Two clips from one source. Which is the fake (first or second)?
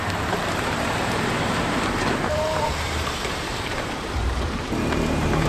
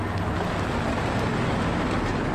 first